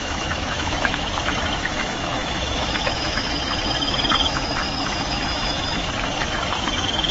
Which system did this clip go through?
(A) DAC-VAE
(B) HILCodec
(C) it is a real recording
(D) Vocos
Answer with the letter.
A